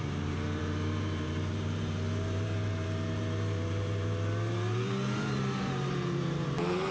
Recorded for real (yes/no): no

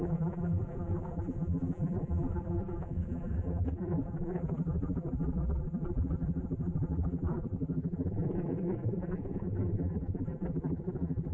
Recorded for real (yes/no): no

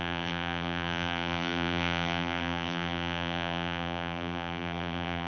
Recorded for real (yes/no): no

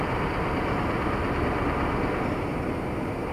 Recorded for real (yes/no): yes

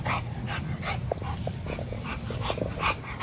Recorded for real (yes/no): no